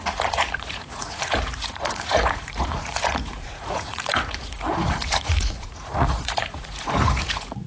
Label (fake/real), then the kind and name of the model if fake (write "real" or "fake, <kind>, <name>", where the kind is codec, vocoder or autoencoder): fake, vocoder, Vocos